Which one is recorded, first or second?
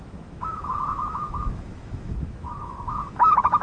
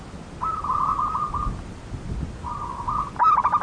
second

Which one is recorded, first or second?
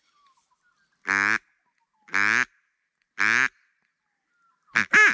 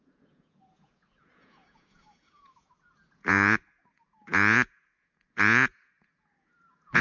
first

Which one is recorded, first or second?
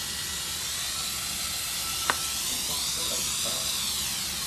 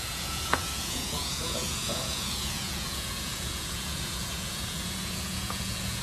first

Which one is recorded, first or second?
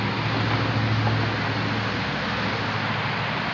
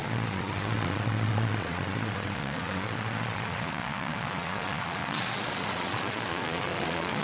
first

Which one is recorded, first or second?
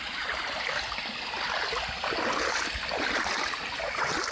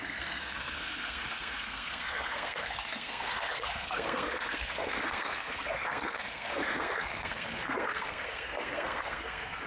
first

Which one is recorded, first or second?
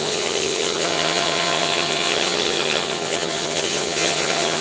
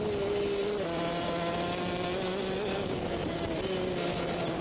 second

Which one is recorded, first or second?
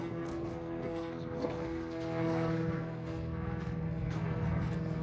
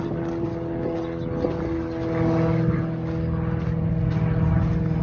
second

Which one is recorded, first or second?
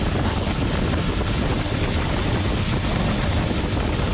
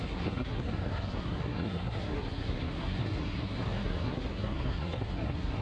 first